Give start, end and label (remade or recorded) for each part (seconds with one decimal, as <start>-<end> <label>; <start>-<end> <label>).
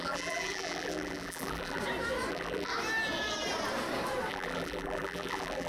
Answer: 0.0-1.8 remade; 1.8-2.3 recorded; 2.3-2.7 remade; 2.7-4.3 recorded; 4.3-5.7 remade